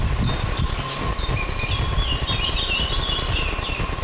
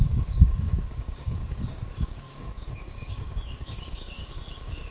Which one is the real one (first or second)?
first